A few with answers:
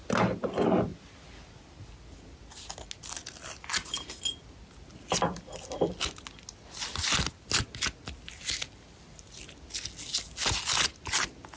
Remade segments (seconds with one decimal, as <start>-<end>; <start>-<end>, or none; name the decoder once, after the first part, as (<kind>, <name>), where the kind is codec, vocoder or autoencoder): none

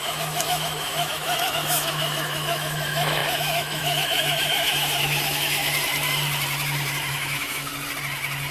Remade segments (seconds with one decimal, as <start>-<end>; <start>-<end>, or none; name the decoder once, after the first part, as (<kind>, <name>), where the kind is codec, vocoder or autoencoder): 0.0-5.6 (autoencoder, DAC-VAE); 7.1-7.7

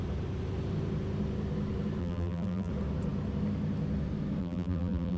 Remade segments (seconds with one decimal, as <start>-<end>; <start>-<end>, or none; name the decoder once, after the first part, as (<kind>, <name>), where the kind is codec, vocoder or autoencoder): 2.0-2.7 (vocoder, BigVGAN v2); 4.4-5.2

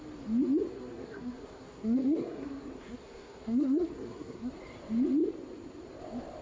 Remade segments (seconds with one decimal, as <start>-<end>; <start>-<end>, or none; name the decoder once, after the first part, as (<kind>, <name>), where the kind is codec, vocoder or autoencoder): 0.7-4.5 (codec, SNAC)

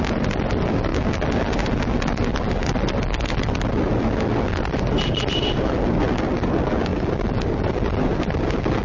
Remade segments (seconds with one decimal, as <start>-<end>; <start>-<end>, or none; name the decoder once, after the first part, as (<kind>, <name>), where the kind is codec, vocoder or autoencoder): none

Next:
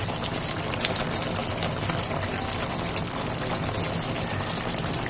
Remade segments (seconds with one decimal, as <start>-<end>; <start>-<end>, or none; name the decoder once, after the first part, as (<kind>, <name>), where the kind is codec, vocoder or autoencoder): none